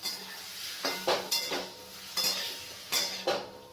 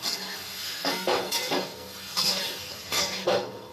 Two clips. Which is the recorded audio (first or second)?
first